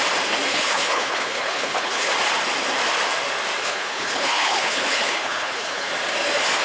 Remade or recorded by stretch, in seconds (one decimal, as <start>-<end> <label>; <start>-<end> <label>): 0.0-0.5 recorded; 0.5-2.1 remade; 2.1-3.6 recorded; 3.6-5.9 remade; 5.9-6.6 recorded